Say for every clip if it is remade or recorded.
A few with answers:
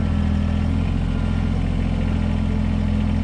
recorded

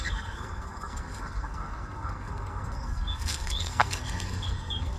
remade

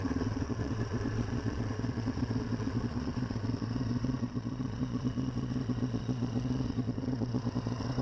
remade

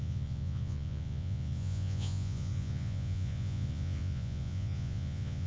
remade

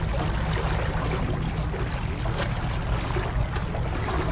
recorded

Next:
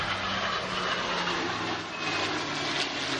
recorded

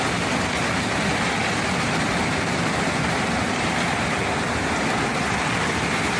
recorded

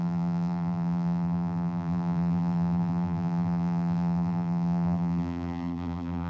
remade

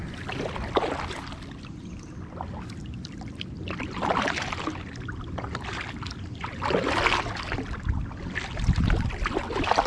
recorded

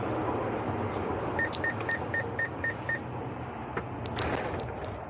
recorded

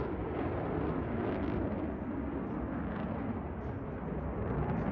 recorded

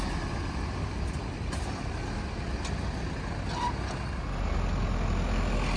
recorded